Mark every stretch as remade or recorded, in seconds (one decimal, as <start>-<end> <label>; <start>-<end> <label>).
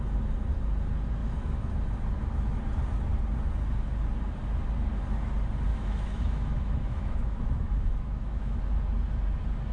0.0-1.2 recorded; 1.2-1.7 remade; 1.7-5.7 recorded; 5.7-8.6 remade; 8.6-9.7 recorded